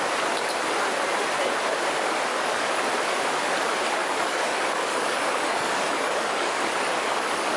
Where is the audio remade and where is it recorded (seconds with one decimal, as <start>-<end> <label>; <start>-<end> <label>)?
0.0-2.3 recorded; 2.3-2.8 remade; 2.8-4.0 recorded; 4.0-7.6 remade